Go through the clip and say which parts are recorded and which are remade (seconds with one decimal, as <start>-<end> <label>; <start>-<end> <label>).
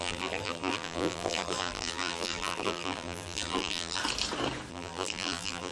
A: 0.0-4.0 remade; 4.0-4.7 recorded; 4.7-5.7 remade